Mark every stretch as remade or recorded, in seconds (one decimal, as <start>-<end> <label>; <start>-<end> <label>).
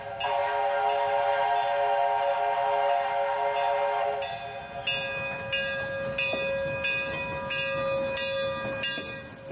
0.0-9.5 recorded